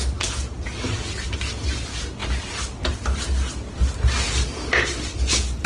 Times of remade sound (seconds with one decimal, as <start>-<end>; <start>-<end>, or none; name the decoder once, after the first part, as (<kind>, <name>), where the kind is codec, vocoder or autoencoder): none